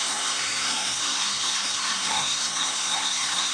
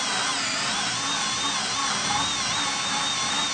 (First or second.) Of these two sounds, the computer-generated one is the first